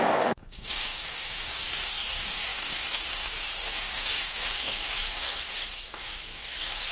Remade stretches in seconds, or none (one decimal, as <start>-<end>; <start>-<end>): 0.0-6.9